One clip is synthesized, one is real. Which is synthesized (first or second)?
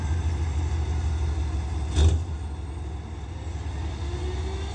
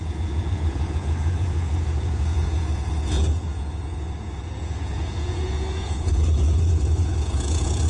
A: second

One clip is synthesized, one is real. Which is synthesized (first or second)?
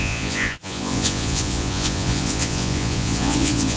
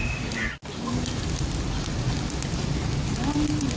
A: first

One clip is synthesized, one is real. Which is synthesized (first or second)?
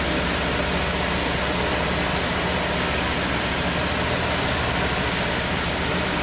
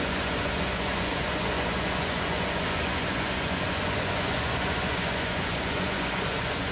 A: second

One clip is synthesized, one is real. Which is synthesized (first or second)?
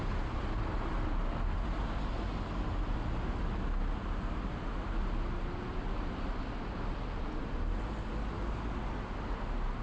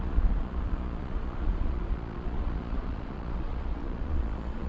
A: second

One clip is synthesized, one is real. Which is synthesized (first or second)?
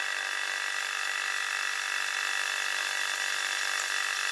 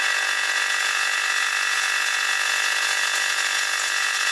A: second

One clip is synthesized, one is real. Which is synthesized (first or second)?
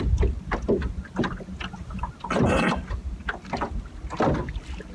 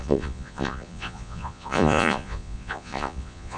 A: second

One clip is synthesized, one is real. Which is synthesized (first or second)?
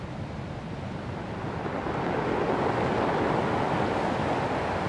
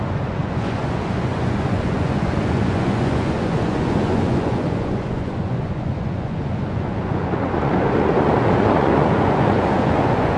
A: second